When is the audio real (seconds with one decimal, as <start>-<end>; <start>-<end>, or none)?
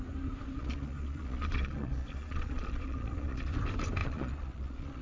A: 0.0-0.6; 3.6-4.0